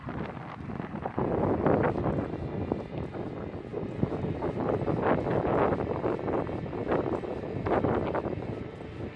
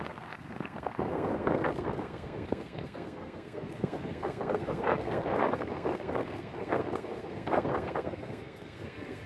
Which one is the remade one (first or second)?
second